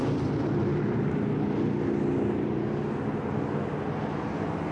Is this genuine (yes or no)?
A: yes